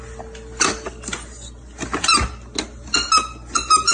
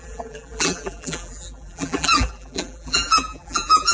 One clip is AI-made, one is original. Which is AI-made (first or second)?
second